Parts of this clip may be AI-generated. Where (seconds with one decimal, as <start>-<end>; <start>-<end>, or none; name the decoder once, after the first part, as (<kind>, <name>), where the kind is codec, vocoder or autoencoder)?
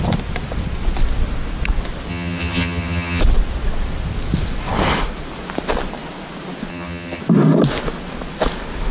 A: 2.1-3.2 (vocoder, HiFi-GAN); 6.7-7.2